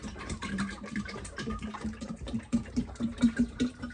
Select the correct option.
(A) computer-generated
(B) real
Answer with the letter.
A